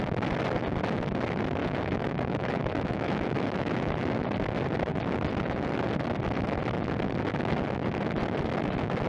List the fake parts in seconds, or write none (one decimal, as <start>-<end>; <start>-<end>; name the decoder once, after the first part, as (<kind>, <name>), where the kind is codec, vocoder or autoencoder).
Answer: 1.6-4.2 (autoencoder, DAC-VAE)